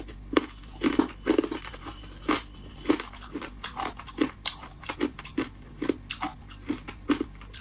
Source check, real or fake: real